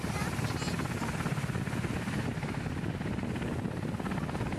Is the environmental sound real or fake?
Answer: real